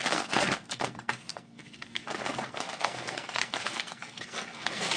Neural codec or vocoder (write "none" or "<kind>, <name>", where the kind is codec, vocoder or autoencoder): codec, SNAC